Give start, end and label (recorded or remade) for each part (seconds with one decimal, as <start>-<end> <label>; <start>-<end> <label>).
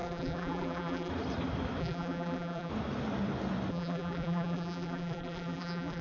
0.0-1.1 remade; 1.1-1.8 recorded; 1.8-2.7 remade; 2.7-3.7 recorded; 3.7-6.0 remade